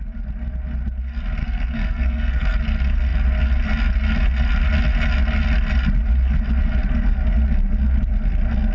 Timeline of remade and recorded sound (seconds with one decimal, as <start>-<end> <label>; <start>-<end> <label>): 0.0-1.4 recorded; 1.4-2.6 remade; 2.6-8.7 recorded